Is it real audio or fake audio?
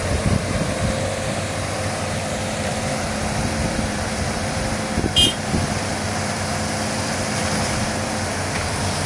fake